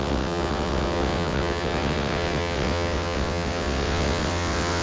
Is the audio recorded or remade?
remade